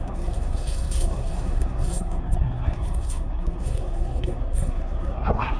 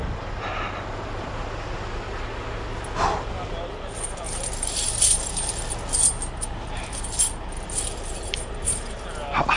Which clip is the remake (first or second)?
first